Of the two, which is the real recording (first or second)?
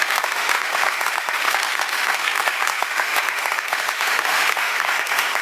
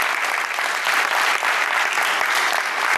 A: second